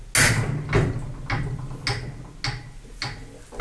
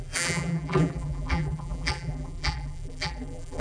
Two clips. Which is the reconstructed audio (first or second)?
second